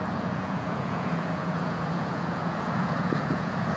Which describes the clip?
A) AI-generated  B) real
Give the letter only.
A